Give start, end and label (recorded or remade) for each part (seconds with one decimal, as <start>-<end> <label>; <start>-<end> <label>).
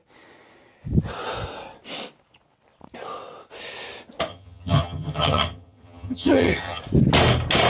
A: 0.0-4.3 recorded; 4.3-6.8 remade; 6.8-7.7 recorded